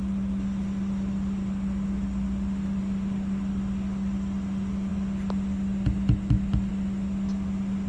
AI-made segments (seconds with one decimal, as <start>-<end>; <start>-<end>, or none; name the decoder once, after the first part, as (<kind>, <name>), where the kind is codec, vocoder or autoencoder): none